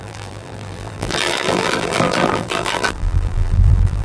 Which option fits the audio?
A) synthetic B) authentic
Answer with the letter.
A